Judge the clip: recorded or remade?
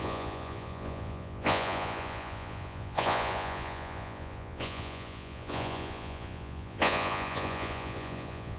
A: remade